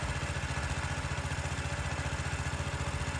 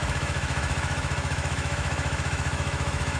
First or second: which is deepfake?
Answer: second